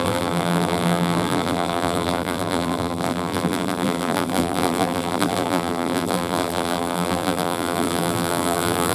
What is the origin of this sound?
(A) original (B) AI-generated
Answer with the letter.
B